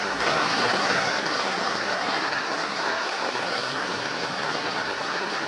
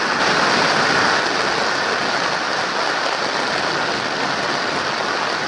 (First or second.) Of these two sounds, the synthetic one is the first